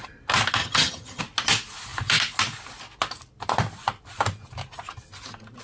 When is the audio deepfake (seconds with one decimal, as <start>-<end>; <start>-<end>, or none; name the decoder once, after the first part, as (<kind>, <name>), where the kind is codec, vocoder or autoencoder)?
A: 0.6-1.2 (vocoder, HiFi-GAN)